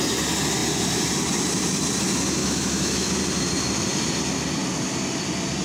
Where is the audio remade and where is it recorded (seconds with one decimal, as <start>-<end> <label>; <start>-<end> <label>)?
0.0-2.4 recorded; 2.4-3.1 remade; 3.1-5.6 recorded

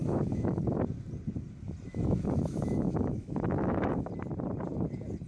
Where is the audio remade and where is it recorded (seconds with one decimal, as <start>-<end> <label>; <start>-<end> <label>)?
0.0-0.6 remade; 0.6-1.9 recorded; 1.9-4.1 remade; 4.1-5.3 recorded

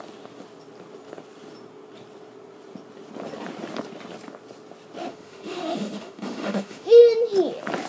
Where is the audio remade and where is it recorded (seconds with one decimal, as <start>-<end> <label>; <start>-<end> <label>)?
0.0-5.1 recorded; 5.1-7.0 remade; 7.0-7.9 recorded

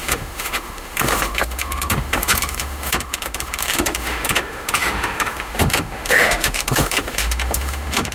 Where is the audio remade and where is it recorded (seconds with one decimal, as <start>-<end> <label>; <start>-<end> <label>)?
0.0-8.1 remade

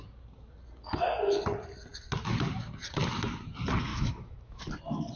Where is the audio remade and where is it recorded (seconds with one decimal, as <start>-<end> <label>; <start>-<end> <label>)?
0.0-3.9 recorded; 3.9-4.6 remade; 4.6-5.2 recorded

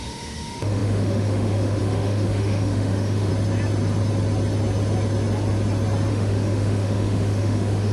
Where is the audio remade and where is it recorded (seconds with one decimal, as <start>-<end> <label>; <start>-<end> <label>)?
0.0-3.3 remade; 3.3-6.1 recorded; 6.1-7.9 remade

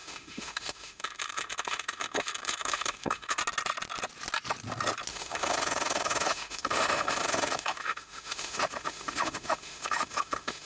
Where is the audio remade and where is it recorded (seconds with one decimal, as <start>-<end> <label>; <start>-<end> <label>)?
0.0-3.4 remade; 3.4-5.1 recorded; 5.1-10.7 remade